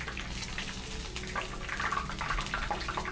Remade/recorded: recorded